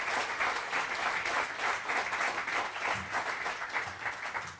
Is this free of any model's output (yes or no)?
yes